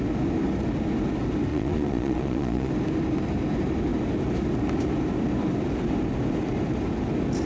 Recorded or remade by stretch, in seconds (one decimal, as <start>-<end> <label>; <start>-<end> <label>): 0.0-1.5 recorded; 1.5-2.7 remade; 2.7-7.5 recorded